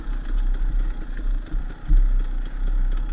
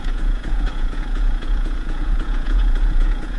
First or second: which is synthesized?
second